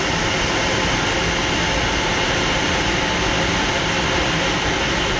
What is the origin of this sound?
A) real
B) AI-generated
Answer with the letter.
A